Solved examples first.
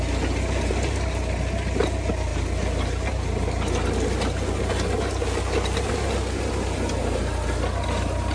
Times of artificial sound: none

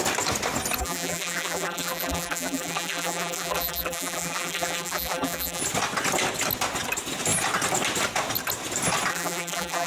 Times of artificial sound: 0.8-5.6; 9.1-9.9

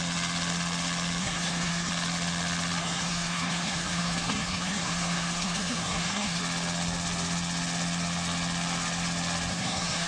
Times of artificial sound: 1.2-1.9; 2.8-6.4; 9.5-10.1